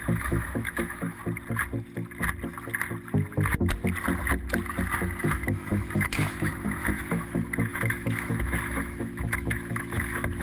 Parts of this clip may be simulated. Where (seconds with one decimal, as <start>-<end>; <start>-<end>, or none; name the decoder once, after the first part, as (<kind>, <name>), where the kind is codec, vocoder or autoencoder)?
0.0-1.2 (autoencoder, DAC-VAE); 5.2-10.4